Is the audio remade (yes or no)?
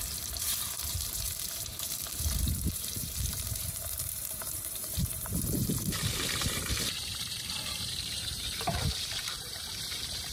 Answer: yes